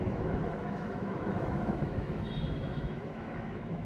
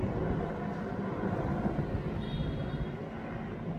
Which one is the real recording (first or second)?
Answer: second